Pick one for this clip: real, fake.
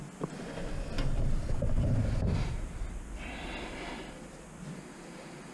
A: real